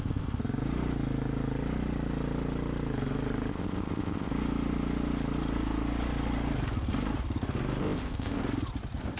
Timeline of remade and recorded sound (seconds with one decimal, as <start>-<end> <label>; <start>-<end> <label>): 0.0-0.4 remade; 0.4-3.5 recorded; 3.5-4.3 remade; 4.3-7.8 recorded; 7.8-8.4 remade; 8.4-9.2 recorded